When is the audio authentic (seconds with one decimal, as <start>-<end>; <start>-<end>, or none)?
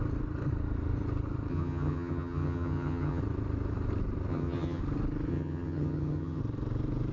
0.0-1.5; 3.2-4.3; 4.8-5.3; 6.4-7.1